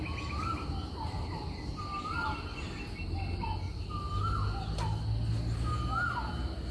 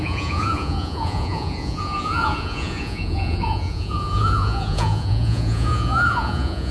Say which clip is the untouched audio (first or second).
first